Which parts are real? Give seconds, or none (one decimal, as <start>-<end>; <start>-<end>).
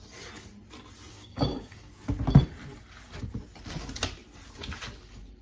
0.0-1.1; 1.9-5.4